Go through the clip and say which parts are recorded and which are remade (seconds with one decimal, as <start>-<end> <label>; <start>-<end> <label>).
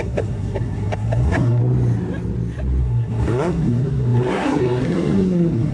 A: 0.0-1.6 remade; 1.6-2.8 recorded; 2.8-5.7 remade